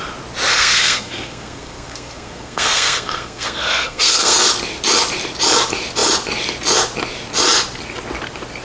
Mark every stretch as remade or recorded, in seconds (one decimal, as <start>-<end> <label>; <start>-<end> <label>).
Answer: 0.0-0.5 recorded; 0.5-4.4 remade; 4.4-8.6 recorded